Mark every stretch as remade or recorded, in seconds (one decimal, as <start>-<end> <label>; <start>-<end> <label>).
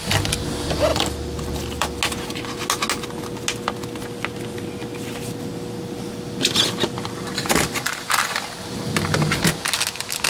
0.0-0.9 recorded; 0.9-2.0 remade; 2.0-10.3 recorded